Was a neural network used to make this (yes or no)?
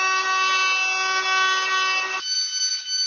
no